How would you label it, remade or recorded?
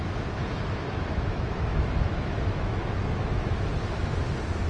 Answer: remade